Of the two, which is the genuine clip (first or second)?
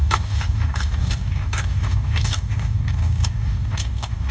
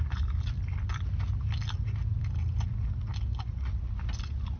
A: second